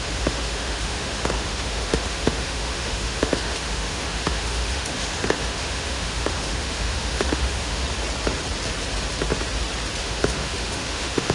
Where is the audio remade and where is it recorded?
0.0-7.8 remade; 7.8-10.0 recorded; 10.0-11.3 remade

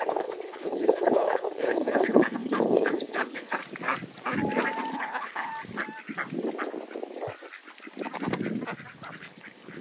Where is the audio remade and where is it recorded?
0.0-3.6 remade; 3.6-4.9 recorded; 4.9-5.5 remade; 5.5-9.2 recorded; 9.2-9.8 remade

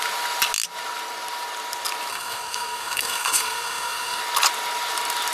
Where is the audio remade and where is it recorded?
0.0-2.1 recorded; 2.1-4.2 remade; 4.2-5.3 recorded

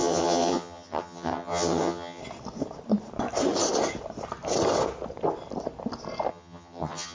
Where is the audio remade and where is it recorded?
0.0-2.2 remade; 2.2-6.3 recorded; 6.3-7.1 remade

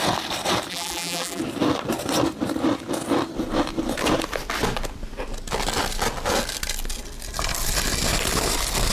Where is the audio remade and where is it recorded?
0.0-0.7 recorded; 0.7-1.4 remade; 1.4-8.9 recorded

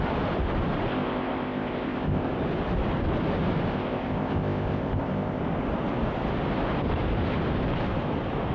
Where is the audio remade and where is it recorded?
0.0-0.9 recorded; 0.9-2.3 remade; 2.3-3.7 recorded; 3.7-5.4 remade; 5.4-8.5 recorded

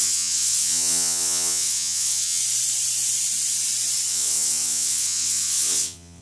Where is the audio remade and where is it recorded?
0.0-2.4 remade; 2.4-4.1 recorded; 4.1-6.2 remade